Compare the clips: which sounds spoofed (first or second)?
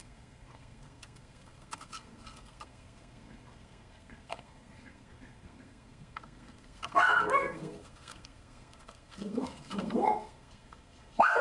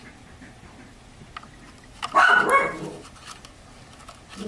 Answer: first